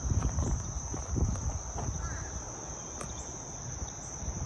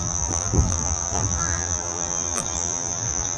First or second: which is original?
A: first